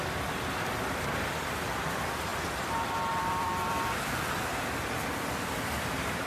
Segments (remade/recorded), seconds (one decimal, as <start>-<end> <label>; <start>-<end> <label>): 0.0-2.3 remade; 2.3-3.1 recorded; 3.1-4.5 remade; 4.5-5.3 recorded; 5.3-6.3 remade

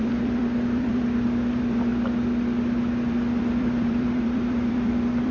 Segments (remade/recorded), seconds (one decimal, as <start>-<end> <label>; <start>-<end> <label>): 0.0-1.9 remade; 1.9-3.1 recorded; 3.1-5.3 remade

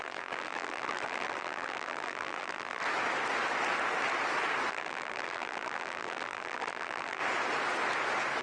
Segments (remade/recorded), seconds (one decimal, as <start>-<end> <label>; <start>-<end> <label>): 0.0-2.8 remade; 2.8-4.7 recorded; 4.7-7.2 remade; 7.2-8.4 recorded

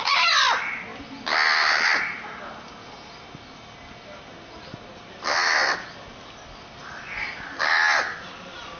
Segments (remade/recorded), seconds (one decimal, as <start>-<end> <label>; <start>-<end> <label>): 0.0-8.8 recorded

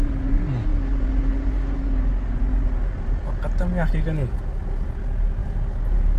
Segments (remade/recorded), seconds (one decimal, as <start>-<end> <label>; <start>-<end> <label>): 0.0-6.2 recorded

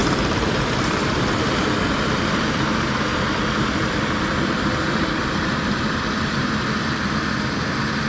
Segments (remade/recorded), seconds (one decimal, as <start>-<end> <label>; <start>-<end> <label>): 0.0-8.1 remade